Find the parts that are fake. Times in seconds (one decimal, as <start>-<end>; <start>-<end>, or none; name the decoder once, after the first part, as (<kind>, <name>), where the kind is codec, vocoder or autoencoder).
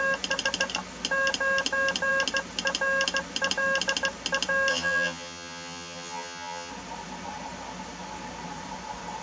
4.7-6.7 (vocoder, HiFi-GAN)